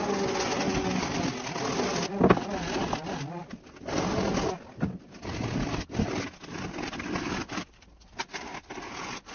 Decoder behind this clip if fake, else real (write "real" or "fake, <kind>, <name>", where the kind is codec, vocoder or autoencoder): real